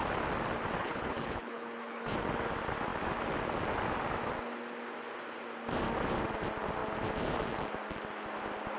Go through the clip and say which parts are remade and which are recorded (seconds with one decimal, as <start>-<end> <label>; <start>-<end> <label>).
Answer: 0.0-0.8 recorded; 0.8-2.1 remade; 2.1-8.8 recorded